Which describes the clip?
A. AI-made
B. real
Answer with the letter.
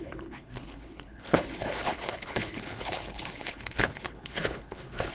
A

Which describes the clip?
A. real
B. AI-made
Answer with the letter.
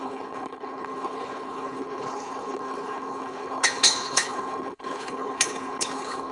B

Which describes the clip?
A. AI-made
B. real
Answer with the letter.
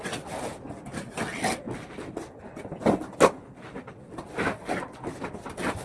B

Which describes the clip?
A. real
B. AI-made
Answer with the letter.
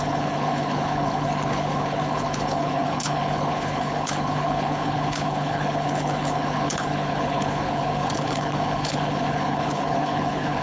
B